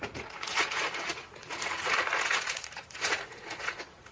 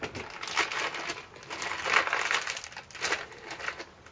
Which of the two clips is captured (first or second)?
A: second